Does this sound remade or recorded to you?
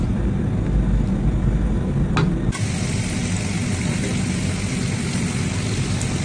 recorded